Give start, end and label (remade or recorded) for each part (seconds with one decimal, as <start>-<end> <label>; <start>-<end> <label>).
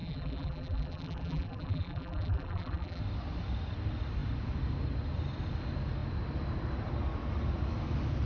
0.0-3.0 remade; 3.0-8.3 recorded